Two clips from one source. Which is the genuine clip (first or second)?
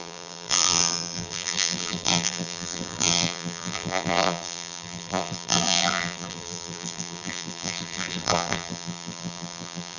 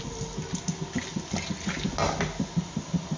second